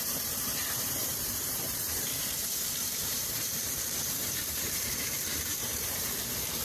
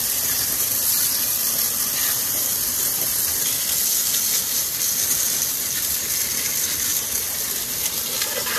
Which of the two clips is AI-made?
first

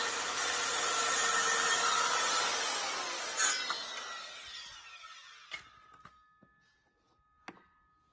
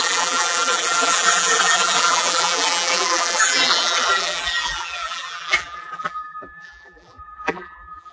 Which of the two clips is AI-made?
second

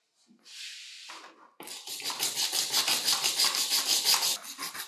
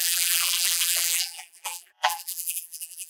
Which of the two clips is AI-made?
second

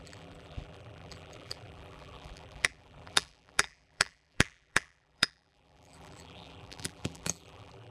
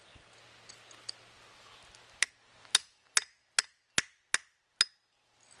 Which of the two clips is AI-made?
first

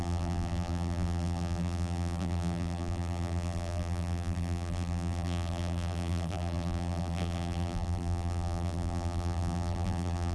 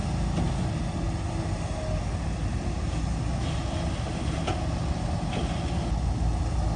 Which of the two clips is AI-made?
first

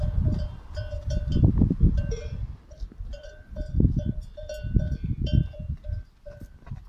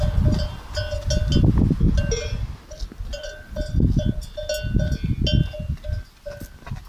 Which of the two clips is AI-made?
first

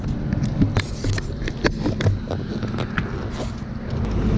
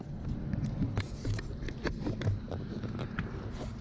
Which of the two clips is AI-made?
second